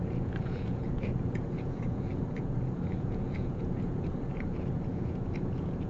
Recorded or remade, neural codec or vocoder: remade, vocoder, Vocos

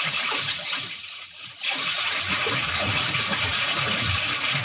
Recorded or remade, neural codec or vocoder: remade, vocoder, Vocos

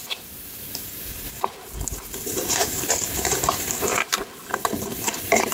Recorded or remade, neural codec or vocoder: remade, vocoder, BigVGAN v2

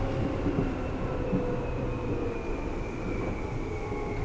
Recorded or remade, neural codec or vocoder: recorded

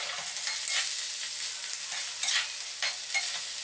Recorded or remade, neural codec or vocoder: recorded